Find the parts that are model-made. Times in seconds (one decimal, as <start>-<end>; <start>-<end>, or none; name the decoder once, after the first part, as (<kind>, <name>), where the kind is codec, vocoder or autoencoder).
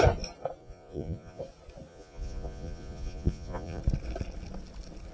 0.6-1.4 (vocoder, Vocos); 1.9-3.8